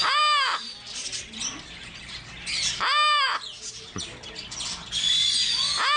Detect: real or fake real